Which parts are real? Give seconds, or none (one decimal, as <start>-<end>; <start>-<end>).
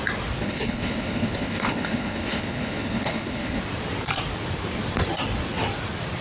0.0-0.4; 3.6-6.2